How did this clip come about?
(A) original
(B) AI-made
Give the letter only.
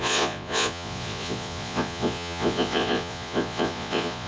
B